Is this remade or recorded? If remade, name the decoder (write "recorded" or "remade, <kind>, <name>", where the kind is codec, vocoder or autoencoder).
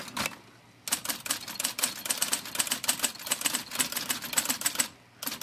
recorded